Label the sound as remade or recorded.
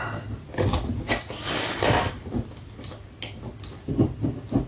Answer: recorded